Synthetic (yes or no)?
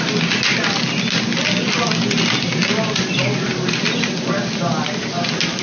no